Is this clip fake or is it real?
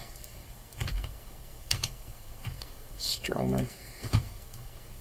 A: fake